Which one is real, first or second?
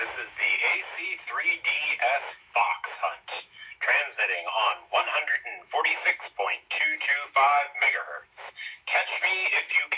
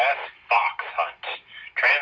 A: second